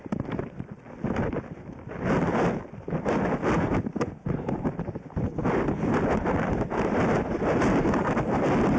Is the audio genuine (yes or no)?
yes